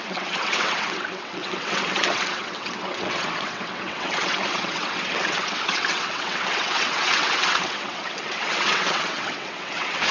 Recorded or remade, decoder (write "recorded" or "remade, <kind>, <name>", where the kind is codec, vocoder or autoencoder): remade, vocoder, WaveNeXt